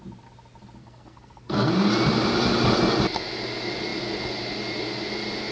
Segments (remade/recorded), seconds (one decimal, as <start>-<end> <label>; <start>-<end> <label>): 0.0-0.8 recorded; 0.8-1.7 remade; 1.7-5.5 recorded

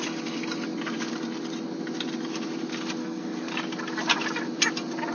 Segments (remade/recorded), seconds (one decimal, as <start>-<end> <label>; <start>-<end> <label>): 0.0-3.0 recorded; 3.0-3.5 remade; 3.5-5.1 recorded